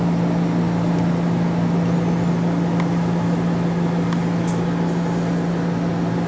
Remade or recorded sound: recorded